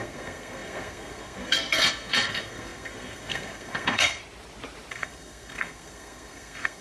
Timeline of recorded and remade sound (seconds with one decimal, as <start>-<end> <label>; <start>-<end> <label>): 0.0-4.2 remade; 4.2-4.9 recorded; 4.9-6.8 remade